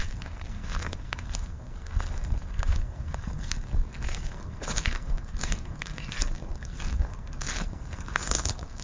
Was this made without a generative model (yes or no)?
no